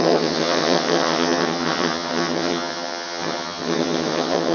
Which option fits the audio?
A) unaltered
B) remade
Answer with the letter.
B